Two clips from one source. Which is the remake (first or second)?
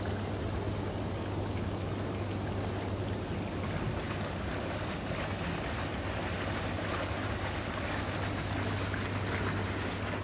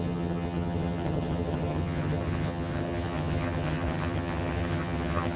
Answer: second